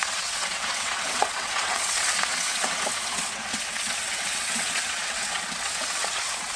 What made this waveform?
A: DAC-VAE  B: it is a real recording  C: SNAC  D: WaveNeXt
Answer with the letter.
D